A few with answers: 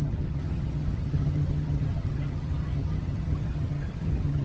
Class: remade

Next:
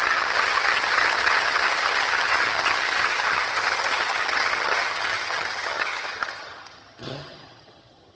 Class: remade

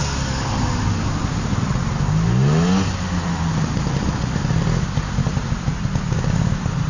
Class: recorded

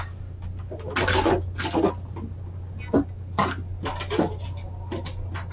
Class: recorded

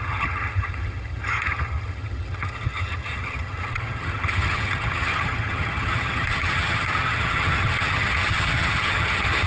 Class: remade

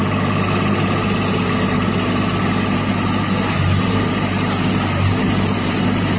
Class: recorded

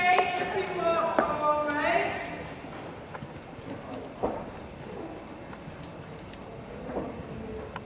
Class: recorded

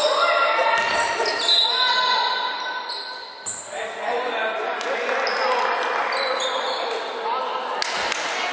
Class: recorded